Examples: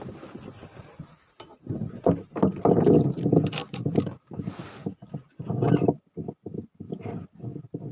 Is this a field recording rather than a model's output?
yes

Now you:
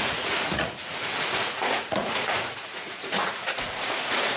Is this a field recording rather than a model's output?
no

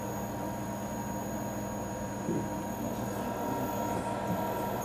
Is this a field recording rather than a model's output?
yes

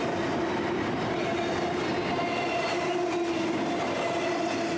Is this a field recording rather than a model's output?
yes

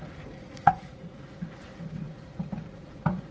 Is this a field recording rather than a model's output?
no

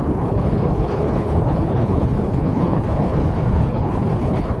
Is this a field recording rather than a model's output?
no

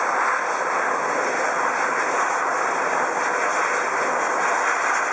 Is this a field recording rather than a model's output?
yes